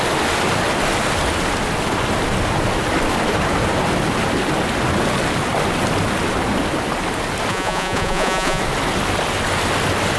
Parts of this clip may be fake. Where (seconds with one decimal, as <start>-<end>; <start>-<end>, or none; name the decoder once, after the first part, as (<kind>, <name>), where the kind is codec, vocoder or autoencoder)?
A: 7.5-8.6 (vocoder, Vocos)